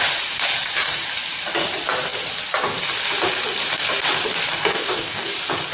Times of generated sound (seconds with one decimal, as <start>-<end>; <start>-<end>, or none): 4.7-5.3